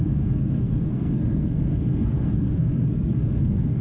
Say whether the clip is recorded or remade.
remade